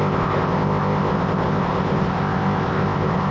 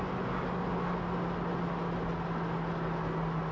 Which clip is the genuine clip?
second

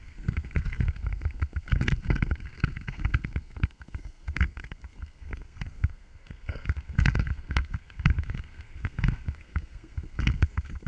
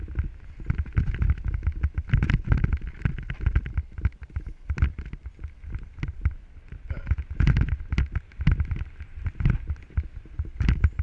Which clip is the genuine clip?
second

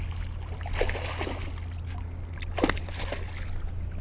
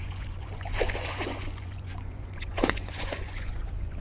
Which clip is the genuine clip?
first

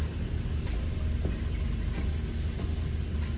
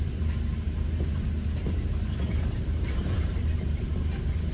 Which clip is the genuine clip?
first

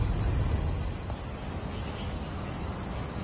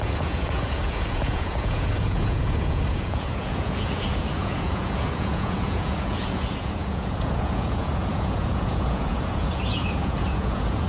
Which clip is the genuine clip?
first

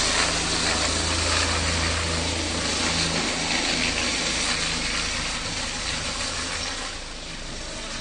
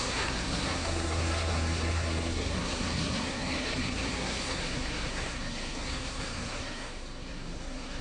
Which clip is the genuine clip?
first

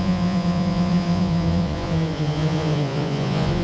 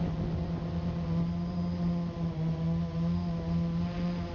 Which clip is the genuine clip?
second